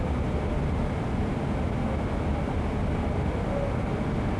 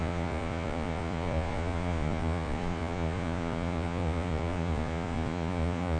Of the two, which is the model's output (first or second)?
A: second